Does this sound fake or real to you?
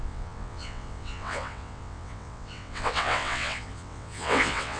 fake